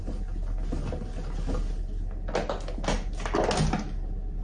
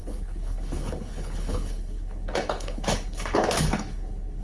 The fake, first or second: second